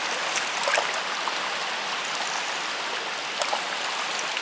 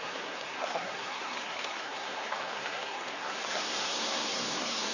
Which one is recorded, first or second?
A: first